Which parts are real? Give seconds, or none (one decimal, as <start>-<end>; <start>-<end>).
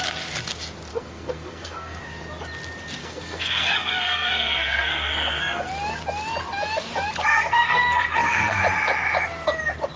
0.0-0.9; 2.0-3.0; 5.7-7.3; 8.6-10.0